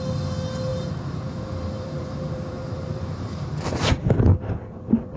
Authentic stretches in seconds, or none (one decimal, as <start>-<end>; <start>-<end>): 0.0-0.7; 3.8-4.3